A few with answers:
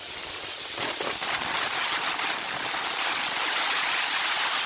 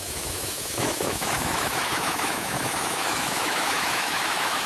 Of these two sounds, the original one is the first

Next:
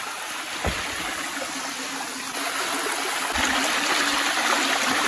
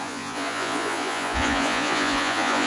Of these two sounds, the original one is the first